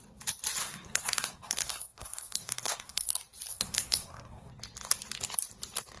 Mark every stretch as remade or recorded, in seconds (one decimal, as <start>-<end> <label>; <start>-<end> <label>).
0.0-0.6 recorded; 0.6-3.1 remade; 3.1-3.5 recorded; 3.5-4.5 remade; 4.5-6.0 recorded